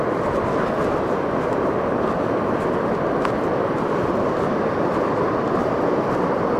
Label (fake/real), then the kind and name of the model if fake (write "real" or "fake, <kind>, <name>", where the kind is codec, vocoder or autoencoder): real